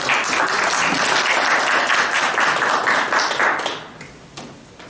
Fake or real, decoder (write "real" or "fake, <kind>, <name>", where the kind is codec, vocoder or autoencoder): real